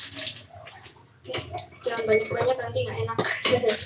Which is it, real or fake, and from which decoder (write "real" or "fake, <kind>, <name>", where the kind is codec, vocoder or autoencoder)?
real